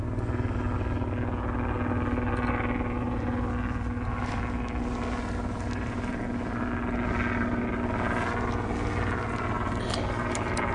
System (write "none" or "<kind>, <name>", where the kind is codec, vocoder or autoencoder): none